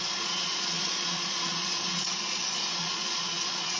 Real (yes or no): no